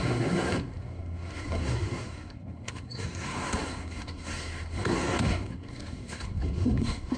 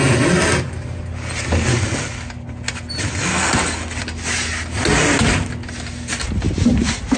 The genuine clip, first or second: second